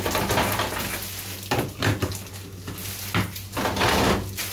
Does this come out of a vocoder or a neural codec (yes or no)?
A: no